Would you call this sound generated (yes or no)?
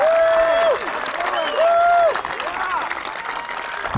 no